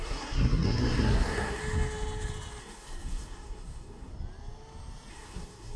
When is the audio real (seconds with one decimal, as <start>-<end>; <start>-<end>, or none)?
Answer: 1.6-2.6; 4.1-5.1